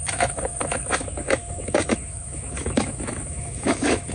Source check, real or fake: fake